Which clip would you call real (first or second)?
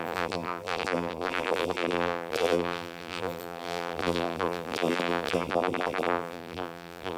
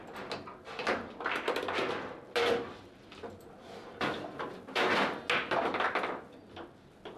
second